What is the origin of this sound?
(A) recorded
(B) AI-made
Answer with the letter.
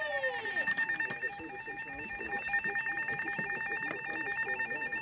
A